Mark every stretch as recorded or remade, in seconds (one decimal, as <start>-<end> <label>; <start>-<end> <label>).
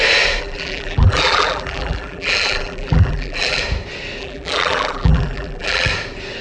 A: 0.0-0.4 recorded; 0.4-3.6 remade; 3.6-4.2 recorded; 4.2-5.9 remade; 5.9-6.4 recorded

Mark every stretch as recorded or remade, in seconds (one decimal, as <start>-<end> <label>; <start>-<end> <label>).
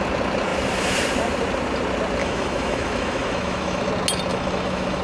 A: 0.0-2.2 recorded; 2.2-3.9 remade; 3.9-4.3 recorded; 4.3-5.0 remade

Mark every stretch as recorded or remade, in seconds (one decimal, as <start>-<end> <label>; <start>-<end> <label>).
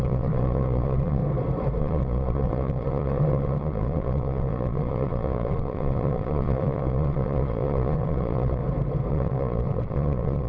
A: 0.0-1.2 remade; 1.2-1.8 recorded; 1.8-8.6 remade; 8.6-9.1 recorded; 9.1-10.5 remade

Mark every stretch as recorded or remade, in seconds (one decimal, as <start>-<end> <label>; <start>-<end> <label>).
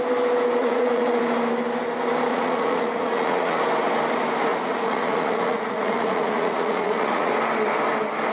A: 0.0-0.6 recorded; 0.6-1.2 remade; 1.2-2.3 recorded; 2.3-3.6 remade; 3.6-4.5 recorded; 4.5-7.3 remade; 7.3-8.3 recorded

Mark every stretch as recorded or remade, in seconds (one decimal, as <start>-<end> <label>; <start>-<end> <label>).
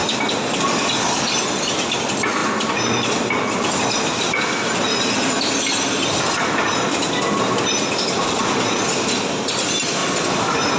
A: 0.0-10.8 recorded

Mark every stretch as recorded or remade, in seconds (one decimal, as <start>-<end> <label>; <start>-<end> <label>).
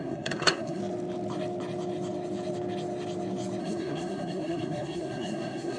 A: 0.0-0.8 remade; 0.8-3.6 recorded; 3.6-5.8 remade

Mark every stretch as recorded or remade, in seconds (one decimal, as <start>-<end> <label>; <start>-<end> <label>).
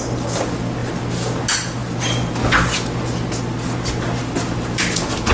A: 0.0-5.3 recorded